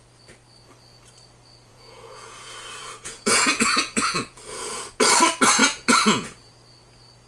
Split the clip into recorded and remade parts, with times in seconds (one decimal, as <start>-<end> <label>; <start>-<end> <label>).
0.0-1.7 recorded; 1.7-4.8 remade; 4.8-5.6 recorded; 5.6-6.5 remade; 6.5-7.3 recorded

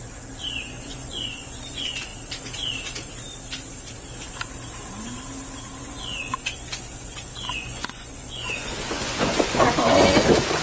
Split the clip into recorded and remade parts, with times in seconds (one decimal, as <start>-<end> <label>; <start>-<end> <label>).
0.0-0.6 recorded; 0.6-2.1 remade; 2.1-5.8 recorded; 5.8-10.6 remade